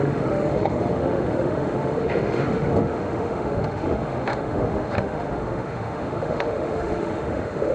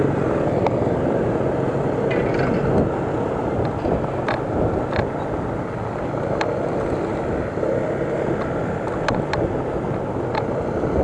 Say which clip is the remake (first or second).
first